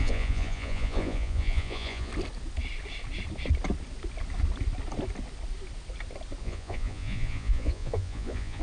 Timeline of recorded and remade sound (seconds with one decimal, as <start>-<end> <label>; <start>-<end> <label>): 0.0-2.1 remade; 2.1-6.4 recorded; 6.4-8.6 remade